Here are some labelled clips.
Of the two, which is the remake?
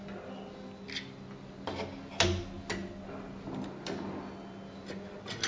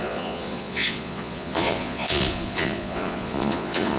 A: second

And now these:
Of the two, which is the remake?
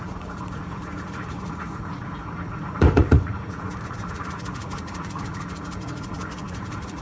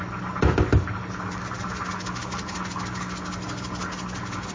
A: first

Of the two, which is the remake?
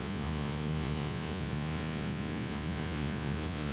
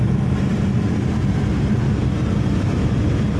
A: first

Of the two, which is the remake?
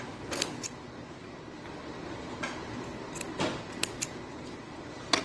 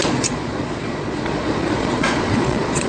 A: second